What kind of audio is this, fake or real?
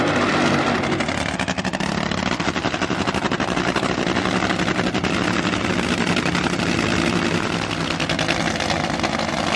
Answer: real